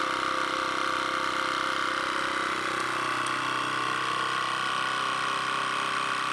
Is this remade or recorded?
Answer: recorded